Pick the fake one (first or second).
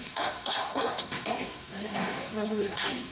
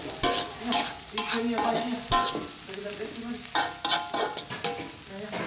first